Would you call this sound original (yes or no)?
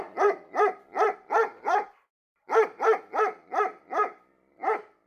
no